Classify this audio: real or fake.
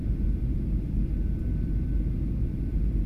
real